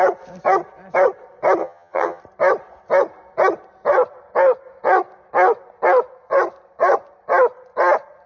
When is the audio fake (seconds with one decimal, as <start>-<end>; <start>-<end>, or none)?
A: 1.6-2.2